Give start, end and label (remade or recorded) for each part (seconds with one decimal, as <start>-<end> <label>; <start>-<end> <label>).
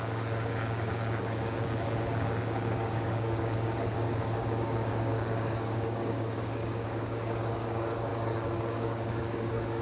0.0-9.8 remade